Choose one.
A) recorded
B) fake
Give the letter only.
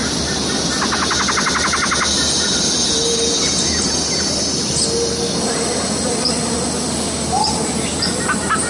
A